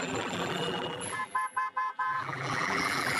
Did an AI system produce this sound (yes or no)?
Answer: yes